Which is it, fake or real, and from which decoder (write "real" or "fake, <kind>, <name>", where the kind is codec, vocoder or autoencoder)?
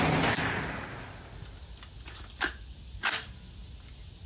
real